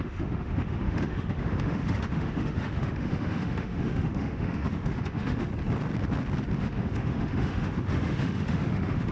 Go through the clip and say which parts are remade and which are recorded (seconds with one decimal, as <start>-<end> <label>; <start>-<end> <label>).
0.0-5.5 remade; 5.5-6.6 recorded; 6.6-9.1 remade